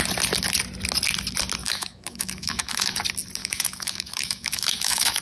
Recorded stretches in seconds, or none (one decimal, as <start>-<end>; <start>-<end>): 0.0-1.6; 3.0-3.4

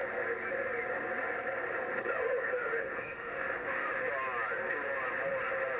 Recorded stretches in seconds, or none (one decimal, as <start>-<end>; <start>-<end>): 0.0-2.6; 4.1-5.8

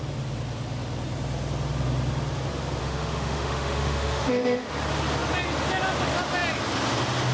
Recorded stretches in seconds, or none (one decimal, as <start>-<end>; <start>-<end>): 0.0-2.8; 4.7-7.3

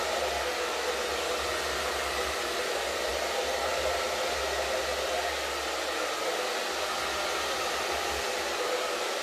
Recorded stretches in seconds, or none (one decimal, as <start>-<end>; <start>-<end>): 0.0-9.2